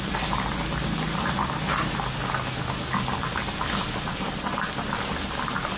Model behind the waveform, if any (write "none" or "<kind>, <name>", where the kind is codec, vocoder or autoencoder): none